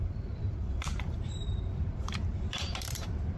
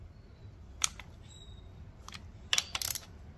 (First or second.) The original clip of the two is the second